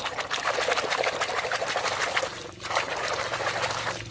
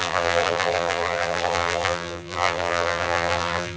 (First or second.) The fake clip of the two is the second